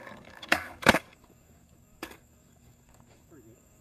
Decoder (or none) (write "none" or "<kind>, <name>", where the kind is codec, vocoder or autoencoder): codec, DAC